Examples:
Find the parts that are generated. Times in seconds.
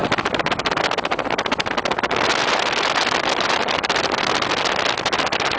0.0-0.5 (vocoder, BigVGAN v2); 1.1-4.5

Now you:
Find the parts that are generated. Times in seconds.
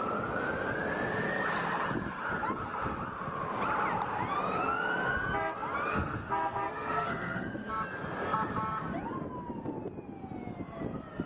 5.9-7.7 (codec, SNAC)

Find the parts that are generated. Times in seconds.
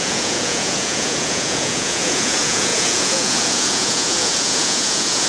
0.0-5.3 (vocoder, Vocos)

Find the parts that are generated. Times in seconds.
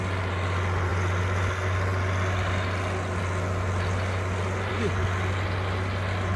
none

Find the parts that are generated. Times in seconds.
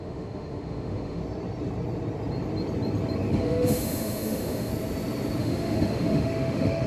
0.0-1.2 (autoencoder, DAC-VAE); 3.3-4.7; 5.4-6.9